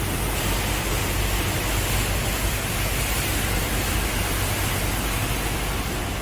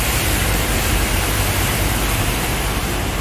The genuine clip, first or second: first